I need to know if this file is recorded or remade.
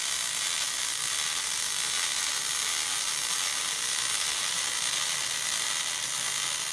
remade